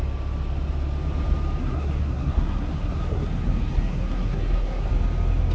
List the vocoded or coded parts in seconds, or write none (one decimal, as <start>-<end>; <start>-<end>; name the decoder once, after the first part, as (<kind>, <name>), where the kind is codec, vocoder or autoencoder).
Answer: 1.6-4.9 (codec, SNAC)